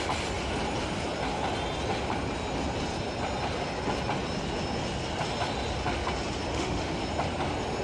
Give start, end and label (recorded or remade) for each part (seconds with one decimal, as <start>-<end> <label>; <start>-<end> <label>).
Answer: 0.0-6.5 recorded; 6.5-7.0 remade; 7.0-7.8 recorded